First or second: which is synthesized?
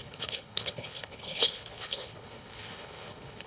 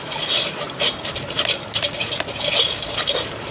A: first